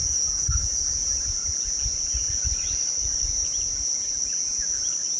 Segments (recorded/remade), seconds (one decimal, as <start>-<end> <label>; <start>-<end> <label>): 0.0-0.6 remade; 0.6-5.2 recorded